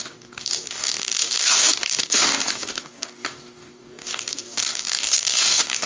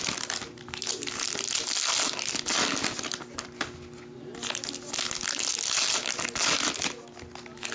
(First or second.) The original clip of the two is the second